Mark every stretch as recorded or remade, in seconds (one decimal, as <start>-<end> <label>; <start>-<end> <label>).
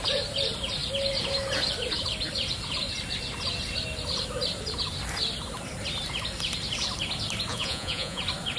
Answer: 0.0-7.5 recorded; 7.5-8.2 remade; 8.2-8.6 recorded